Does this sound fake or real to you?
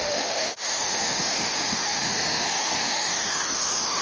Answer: fake